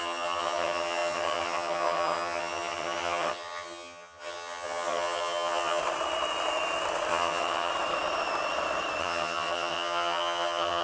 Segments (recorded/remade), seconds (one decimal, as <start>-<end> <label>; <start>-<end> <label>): 0.0-5.8 remade; 5.8-7.1 recorded; 7.1-7.7 remade; 7.7-9.0 recorded; 9.0-10.8 remade